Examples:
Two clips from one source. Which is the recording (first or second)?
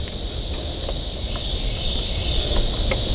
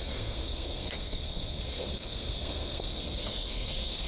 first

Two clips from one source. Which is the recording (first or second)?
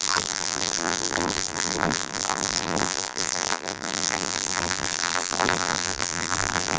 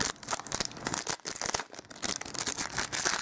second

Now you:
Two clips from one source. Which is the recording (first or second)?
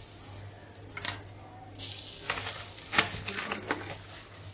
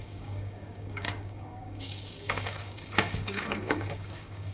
first